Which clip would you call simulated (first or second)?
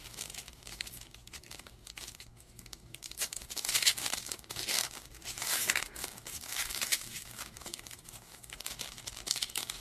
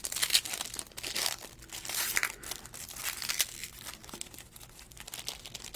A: first